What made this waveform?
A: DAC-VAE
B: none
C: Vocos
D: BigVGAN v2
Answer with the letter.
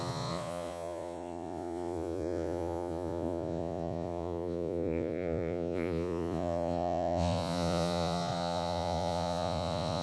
C